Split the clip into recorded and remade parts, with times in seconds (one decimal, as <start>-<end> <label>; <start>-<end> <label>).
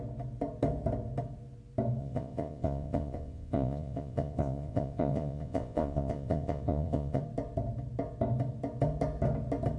0.0-2.0 recorded; 2.0-7.2 remade; 7.2-9.8 recorded